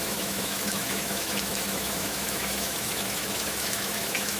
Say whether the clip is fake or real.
fake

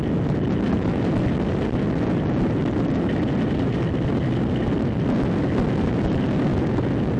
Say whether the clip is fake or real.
real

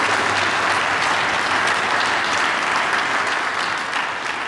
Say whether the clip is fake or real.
real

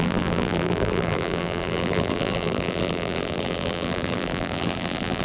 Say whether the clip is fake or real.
fake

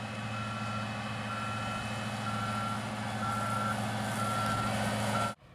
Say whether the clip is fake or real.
real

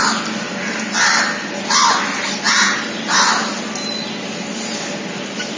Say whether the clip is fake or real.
real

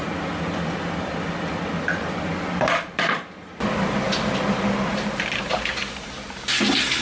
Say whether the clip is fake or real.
real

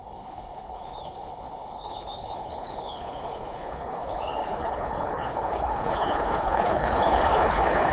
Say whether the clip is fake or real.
fake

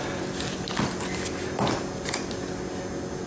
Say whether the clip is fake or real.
real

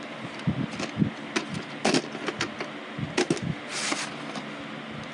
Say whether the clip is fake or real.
real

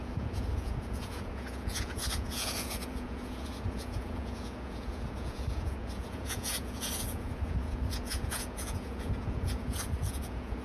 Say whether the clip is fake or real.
fake